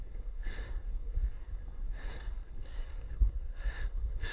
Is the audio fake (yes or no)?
yes